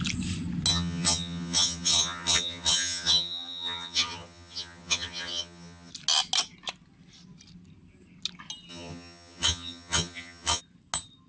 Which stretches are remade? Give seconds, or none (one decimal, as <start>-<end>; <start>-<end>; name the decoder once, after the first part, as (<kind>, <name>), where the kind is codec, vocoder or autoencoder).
0.7-5.9 (vocoder, HiFi-GAN); 8.7-10.6